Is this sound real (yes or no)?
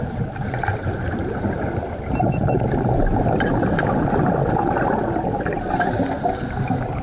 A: yes